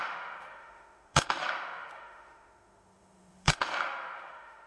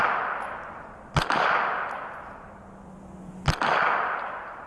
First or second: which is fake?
first